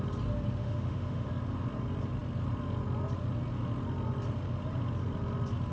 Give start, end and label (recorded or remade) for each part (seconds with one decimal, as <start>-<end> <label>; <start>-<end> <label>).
0.0-0.6 recorded; 0.6-1.3 remade; 1.3-5.7 recorded